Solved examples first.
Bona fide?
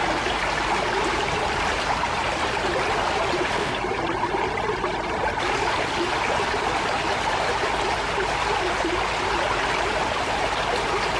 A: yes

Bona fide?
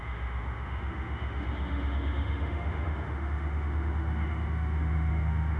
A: no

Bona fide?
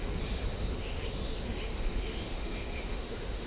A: no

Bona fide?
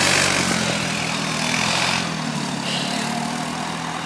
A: yes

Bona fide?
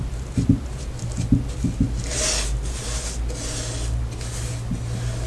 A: yes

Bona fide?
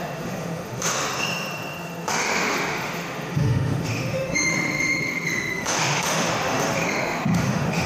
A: no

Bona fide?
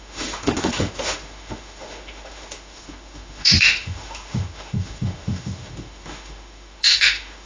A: no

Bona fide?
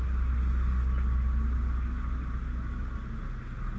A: yes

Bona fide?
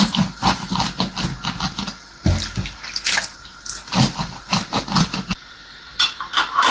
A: yes